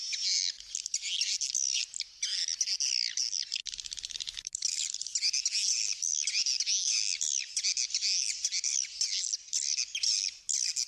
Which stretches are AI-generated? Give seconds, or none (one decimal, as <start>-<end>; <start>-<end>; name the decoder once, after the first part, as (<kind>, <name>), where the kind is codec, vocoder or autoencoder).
none